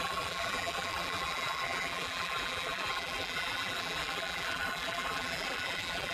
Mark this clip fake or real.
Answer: fake